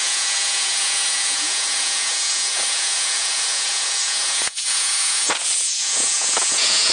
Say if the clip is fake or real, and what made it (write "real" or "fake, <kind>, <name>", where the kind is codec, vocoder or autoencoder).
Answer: fake, vocoder, Vocos